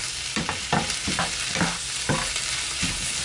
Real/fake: real